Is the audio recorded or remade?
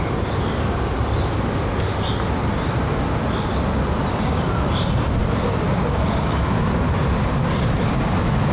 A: recorded